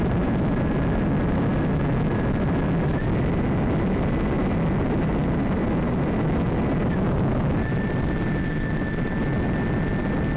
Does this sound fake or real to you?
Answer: real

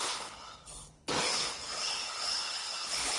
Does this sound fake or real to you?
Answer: fake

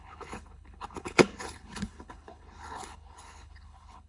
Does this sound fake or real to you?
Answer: fake